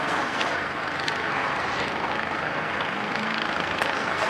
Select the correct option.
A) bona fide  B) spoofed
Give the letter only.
B